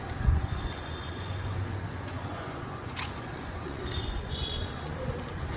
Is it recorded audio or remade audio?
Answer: remade